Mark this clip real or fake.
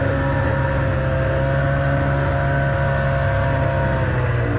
real